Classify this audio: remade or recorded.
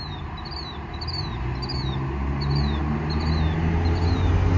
recorded